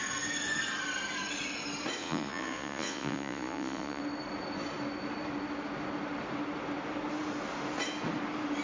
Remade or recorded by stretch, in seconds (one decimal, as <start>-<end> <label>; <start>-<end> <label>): 0.0-2.0 recorded; 2.0-4.0 remade; 4.0-8.6 recorded